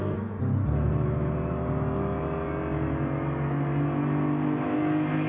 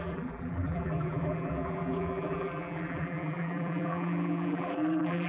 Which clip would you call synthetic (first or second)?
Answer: second